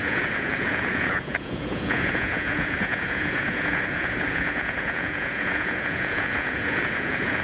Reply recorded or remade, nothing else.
remade